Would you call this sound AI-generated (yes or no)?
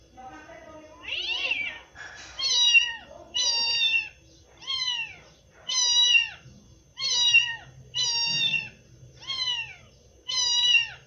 no